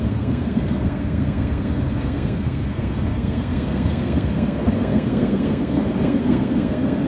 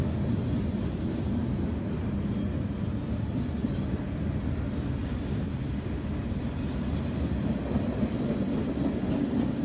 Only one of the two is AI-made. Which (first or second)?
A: first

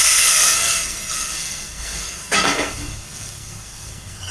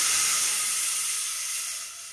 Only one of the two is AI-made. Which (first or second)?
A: first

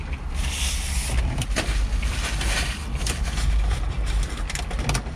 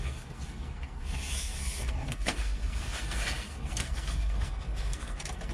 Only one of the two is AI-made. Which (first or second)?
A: second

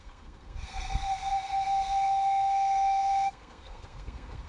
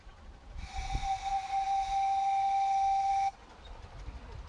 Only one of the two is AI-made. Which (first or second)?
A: first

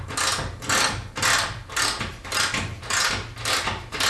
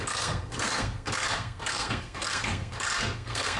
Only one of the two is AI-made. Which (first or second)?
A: second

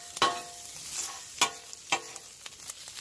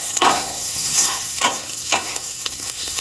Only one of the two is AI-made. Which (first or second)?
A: second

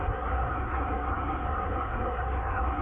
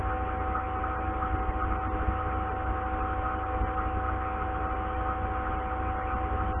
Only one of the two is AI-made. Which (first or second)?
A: first